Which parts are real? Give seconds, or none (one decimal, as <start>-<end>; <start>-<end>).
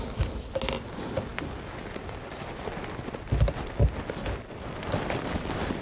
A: 0.0-5.8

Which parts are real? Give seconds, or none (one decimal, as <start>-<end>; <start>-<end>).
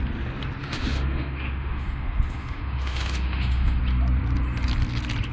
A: 0.0-0.6; 3.8-5.3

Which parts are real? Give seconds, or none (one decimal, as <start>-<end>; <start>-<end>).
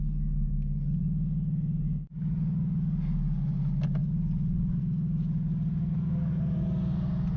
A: 0.0-4.0; 4.8-7.4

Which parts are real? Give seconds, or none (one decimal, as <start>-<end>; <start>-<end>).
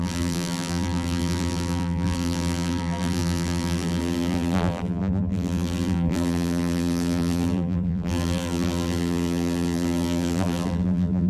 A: none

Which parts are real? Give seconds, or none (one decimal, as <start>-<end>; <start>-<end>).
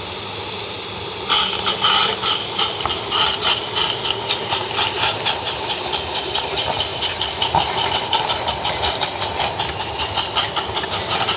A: 0.0-4.6; 5.3-11.4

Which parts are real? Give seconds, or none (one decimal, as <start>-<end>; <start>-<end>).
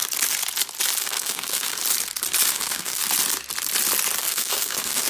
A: 0.0-1.0; 1.8-2.5; 3.0-4.2